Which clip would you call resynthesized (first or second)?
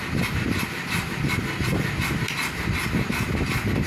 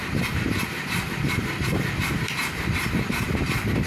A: second